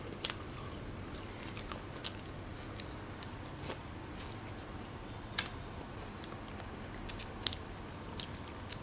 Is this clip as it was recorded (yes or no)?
yes